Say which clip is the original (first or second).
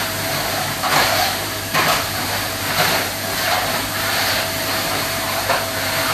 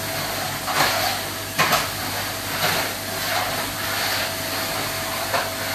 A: second